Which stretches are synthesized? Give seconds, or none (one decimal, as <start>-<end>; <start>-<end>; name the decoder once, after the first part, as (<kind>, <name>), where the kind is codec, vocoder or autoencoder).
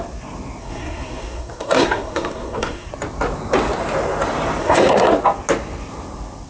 0.6-2.9 (codec, SNAC); 4.6-5.1